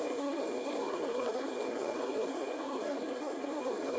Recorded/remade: remade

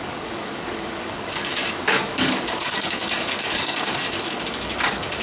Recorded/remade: remade